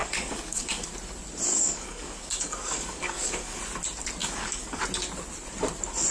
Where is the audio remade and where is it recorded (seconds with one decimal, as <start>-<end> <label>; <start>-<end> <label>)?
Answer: 0.0-0.9 remade; 0.9-1.5 recorded; 1.5-3.6 remade; 3.6-4.2 recorded; 4.2-4.8 remade; 4.8-6.1 recorded